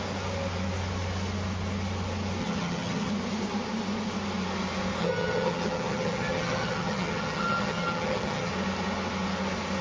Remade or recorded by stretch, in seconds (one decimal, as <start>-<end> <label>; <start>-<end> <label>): 0.0-2.4 recorded; 2.4-3.1 remade; 3.1-5.0 recorded; 5.0-8.5 remade; 8.5-9.8 recorded